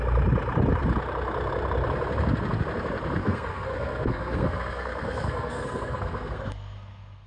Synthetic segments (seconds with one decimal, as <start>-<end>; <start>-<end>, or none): 3.2-7.3